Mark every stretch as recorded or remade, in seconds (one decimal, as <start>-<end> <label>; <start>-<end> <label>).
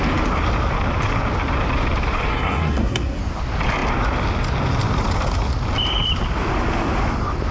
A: 0.0-2.3 recorded; 2.3-3.2 remade; 3.2-7.5 recorded